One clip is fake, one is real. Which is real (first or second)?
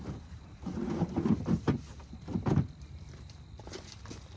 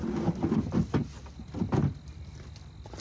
second